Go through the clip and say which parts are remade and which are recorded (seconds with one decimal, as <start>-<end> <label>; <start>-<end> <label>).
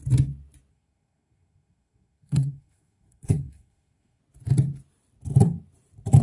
0.0-0.7 recorded; 0.7-4.2 remade; 4.2-6.2 recorded